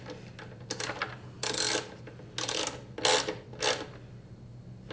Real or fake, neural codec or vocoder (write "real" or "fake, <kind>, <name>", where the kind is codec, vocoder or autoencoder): real